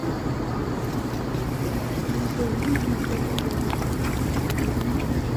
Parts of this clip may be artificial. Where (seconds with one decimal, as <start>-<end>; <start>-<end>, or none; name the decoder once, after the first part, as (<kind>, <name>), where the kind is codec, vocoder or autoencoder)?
none